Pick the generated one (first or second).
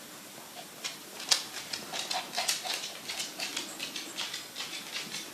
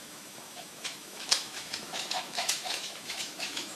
second